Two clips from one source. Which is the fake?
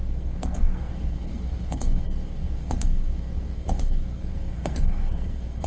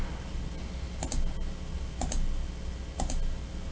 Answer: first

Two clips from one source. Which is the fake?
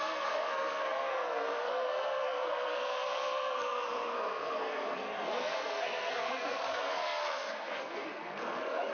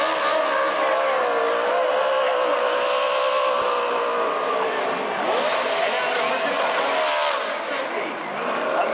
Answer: first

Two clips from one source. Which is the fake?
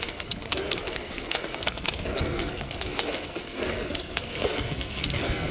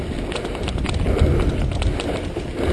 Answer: first